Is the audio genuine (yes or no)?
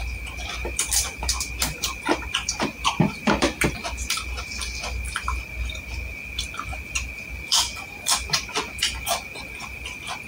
no